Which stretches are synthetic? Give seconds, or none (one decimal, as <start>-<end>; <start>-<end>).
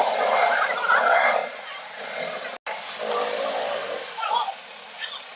1.4-2.0; 3.8-4.3